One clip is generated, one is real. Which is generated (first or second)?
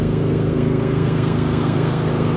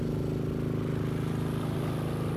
first